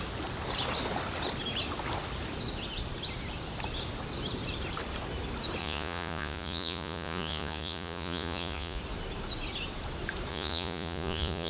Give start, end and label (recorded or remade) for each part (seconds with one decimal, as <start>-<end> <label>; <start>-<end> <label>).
0.0-5.6 recorded; 5.6-8.8 remade; 8.8-10.3 recorded; 10.3-11.5 remade